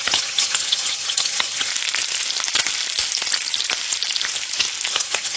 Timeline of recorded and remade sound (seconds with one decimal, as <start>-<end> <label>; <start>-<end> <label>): 0.0-1.7 remade; 1.7-4.9 recorded; 4.9-5.4 remade